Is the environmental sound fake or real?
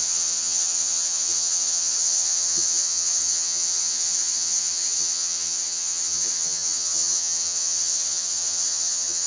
fake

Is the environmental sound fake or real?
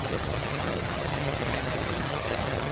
fake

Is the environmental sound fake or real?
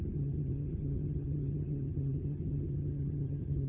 fake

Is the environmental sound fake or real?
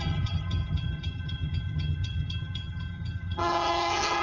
fake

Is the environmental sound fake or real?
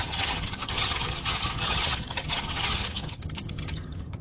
fake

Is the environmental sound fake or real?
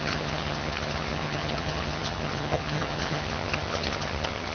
fake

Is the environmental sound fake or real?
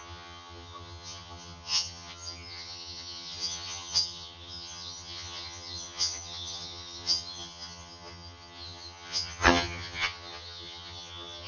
fake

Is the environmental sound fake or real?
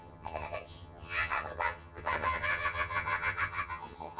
fake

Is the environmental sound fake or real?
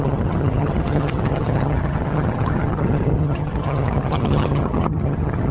fake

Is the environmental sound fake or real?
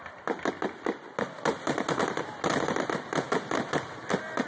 real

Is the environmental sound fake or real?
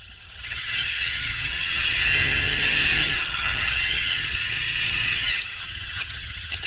fake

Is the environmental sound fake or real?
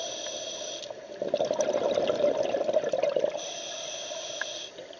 real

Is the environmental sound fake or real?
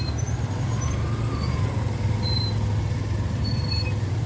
real